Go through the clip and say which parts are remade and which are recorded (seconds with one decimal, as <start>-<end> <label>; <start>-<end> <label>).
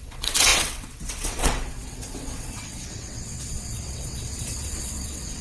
0.0-5.4 remade